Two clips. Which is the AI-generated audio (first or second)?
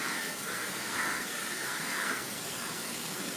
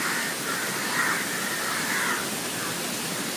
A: first